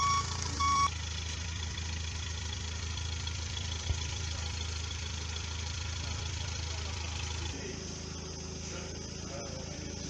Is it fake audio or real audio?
fake